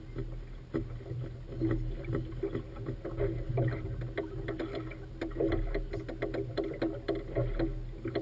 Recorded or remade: recorded